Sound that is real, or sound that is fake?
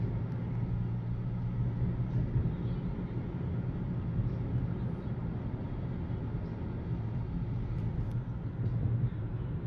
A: real